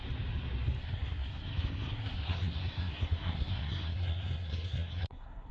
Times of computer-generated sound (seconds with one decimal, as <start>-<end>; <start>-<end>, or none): 0.8-5.5